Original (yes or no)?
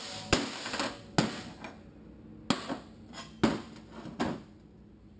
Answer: yes